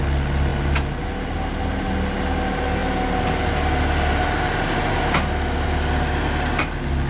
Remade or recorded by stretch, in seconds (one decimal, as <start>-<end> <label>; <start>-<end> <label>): 0.0-7.1 recorded